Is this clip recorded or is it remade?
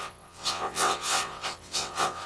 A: remade